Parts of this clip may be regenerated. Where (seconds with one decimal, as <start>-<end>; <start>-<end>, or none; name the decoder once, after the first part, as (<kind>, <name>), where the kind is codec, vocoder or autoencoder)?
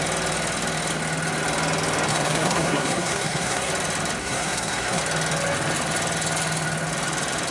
2.1-3.7 (codec, SNAC); 4.2-5.0